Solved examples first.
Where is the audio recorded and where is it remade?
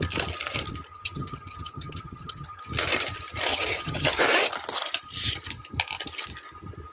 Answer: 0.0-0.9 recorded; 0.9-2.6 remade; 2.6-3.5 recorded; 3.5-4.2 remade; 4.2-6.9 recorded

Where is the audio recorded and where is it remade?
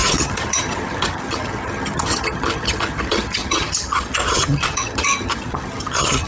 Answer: 0.0-6.3 remade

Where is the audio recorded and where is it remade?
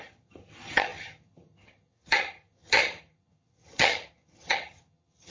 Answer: 0.0-5.3 remade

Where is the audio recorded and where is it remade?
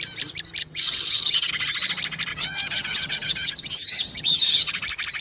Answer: 0.0-0.6 recorded; 0.6-1.5 remade; 1.5-2.3 recorded; 2.3-4.7 remade; 4.7-5.2 recorded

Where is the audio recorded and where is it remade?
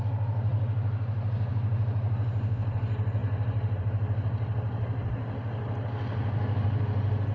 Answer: 0.0-7.3 recorded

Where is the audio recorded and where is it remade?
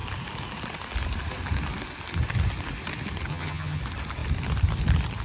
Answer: 0.0-3.3 recorded; 3.3-3.8 remade; 3.8-5.2 recorded